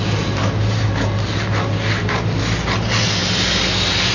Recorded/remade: recorded